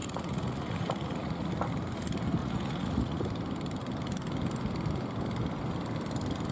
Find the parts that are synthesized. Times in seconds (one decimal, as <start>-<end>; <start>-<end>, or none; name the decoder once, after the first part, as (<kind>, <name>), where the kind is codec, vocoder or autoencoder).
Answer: 0.0-1.5 (vocoder, Vocos); 2.4-3.2